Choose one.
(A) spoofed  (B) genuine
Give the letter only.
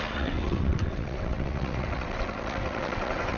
A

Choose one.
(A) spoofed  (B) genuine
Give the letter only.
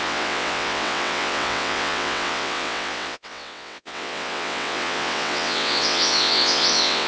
A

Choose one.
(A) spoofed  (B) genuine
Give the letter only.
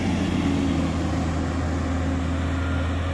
B